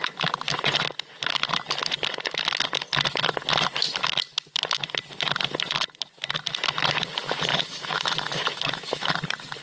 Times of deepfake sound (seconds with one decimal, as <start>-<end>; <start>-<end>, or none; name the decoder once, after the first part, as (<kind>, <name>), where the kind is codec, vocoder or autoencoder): 7.5-9.1 (autoencoder, DAC-VAE)